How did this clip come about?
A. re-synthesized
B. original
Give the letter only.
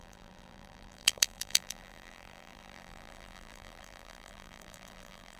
A